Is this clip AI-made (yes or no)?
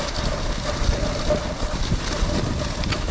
no